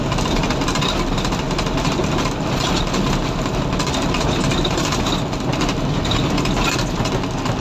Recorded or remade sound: recorded